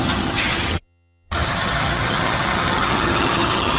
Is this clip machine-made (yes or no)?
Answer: yes